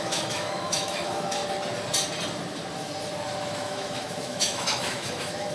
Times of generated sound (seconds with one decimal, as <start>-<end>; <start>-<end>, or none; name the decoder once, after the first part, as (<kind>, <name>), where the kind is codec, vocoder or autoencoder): 0.0-1.4 (autoencoder, DAC-VAE); 3.4-5.5